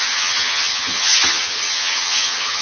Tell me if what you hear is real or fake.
fake